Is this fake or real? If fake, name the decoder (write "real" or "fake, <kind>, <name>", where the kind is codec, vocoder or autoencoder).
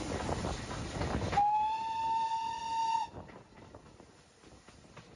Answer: real